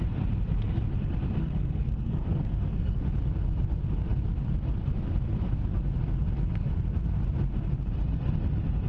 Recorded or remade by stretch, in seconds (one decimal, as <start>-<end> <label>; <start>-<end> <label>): 0.0-1.4 recorded; 1.4-3.0 remade; 3.0-8.9 recorded